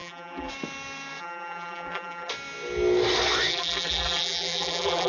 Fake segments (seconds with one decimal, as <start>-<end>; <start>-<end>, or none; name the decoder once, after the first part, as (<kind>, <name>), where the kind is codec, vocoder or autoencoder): 0.0-0.5 (vocoder, BigVGAN v2); 1.2-2.3; 3.5-5.1